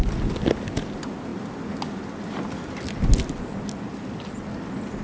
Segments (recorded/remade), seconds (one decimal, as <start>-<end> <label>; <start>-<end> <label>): 0.0-5.0 recorded